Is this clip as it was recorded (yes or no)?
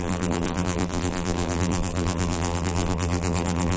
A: no